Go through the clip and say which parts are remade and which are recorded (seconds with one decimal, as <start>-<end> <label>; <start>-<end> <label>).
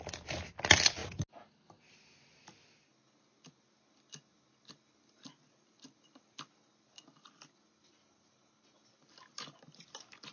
0.0-10.3 recorded